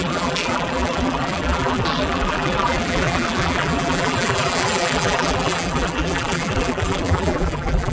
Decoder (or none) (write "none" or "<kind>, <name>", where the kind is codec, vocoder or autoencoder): vocoder, BigVGAN v2